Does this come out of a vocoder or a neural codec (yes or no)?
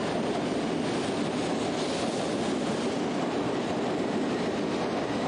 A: no